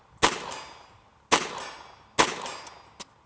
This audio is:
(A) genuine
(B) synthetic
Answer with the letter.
A